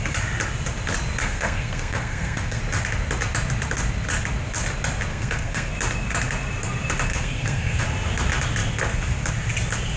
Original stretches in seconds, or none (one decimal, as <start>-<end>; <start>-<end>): 0.0-1.2; 2.6-5.1; 5.7-7.1; 7.8-10.0